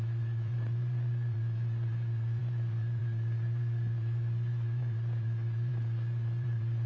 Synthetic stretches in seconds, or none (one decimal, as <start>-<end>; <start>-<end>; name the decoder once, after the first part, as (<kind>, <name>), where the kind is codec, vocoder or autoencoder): 0.0-6.9 (vocoder, BigVGAN v2)